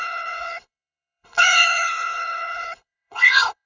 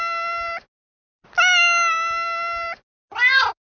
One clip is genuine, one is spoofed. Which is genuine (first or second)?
second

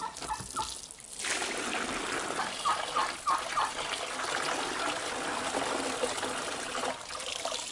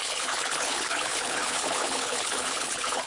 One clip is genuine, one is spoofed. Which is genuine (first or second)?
first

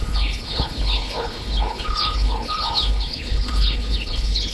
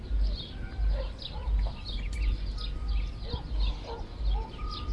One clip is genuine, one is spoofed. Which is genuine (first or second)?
second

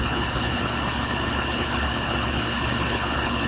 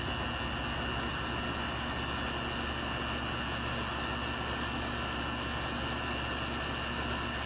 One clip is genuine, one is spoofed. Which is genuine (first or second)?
second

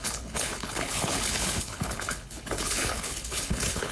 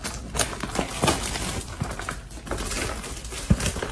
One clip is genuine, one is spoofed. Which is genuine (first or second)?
second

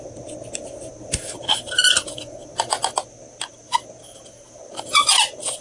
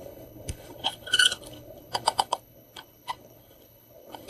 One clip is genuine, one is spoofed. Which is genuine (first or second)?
first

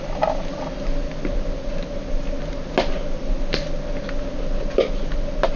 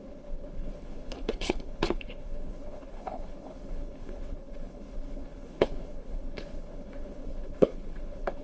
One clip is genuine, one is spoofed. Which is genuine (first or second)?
first